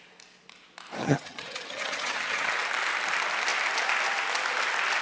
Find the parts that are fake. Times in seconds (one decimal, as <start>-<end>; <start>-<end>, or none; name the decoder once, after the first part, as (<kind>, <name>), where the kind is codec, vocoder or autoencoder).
1.0-2.5 (vocoder, HiFi-GAN)